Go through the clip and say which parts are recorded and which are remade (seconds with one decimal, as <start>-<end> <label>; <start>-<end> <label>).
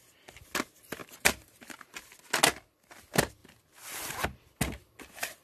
0.0-1.0 recorded; 1.0-1.9 remade; 1.9-5.4 recorded